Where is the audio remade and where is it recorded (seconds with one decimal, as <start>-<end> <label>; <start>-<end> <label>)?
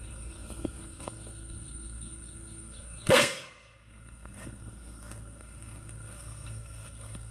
0.0-7.3 remade